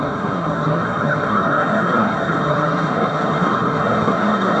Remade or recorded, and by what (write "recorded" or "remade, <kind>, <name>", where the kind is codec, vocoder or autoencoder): remade, codec, SNAC